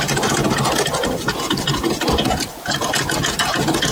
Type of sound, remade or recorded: remade